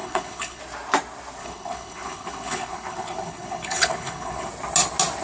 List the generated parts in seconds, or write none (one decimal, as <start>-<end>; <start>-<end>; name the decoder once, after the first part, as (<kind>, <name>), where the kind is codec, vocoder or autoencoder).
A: 0.0-0.6 (codec, HILCodec); 1.4-4.5